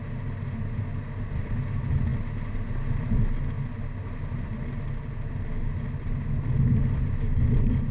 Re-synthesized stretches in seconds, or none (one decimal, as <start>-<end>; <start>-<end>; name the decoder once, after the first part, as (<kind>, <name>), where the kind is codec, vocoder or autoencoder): none